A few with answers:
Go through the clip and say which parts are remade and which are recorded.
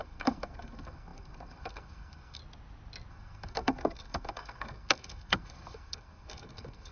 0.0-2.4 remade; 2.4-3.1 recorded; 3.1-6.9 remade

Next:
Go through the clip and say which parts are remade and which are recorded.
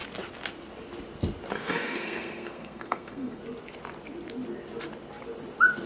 0.0-1.6 recorded; 1.6-3.4 remade; 3.4-5.9 recorded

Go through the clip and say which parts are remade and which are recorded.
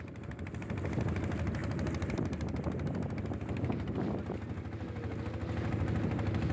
0.0-6.5 recorded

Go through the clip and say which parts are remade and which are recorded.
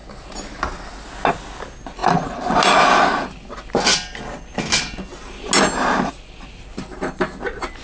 0.0-7.8 recorded